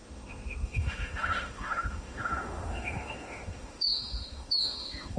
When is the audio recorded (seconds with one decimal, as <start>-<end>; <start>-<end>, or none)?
none